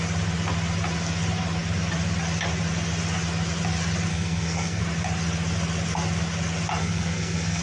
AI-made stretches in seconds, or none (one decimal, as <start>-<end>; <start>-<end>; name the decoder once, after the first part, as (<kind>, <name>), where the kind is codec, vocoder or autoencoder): 4.1-4.8 (codec, SNAC); 6.8-7.6